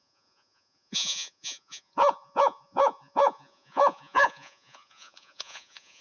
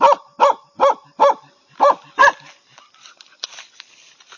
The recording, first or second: second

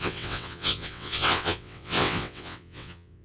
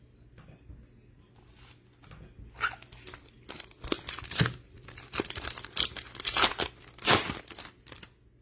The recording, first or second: second